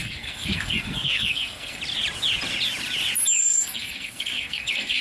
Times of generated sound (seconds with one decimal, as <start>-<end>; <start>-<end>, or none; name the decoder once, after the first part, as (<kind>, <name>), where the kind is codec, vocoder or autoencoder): 0.0-1.8 (codec, SNAC); 3.4-5.0